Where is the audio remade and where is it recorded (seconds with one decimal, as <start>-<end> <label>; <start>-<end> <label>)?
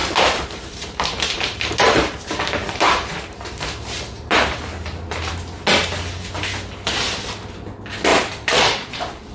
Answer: 0.0-1.7 remade; 1.7-2.6 recorded; 2.6-5.3 remade; 5.3-8.1 recorded; 8.1-9.3 remade